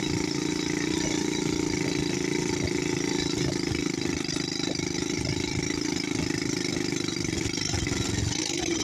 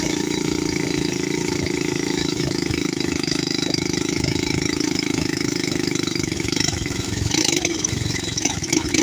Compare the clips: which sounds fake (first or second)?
second